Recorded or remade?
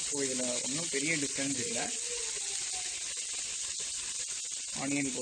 recorded